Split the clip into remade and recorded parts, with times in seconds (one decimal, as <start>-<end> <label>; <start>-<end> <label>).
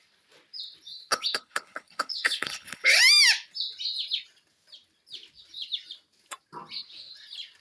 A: 0.0-1.1 recorded; 1.1-3.0 remade; 3.0-7.6 recorded